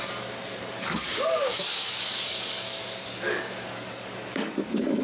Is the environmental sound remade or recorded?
remade